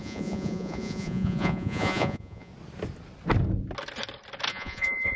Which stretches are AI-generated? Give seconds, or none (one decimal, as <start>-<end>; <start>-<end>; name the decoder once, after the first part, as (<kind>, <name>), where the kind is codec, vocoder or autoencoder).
0.0-2.5 (vocoder, Vocos); 4.5-5.2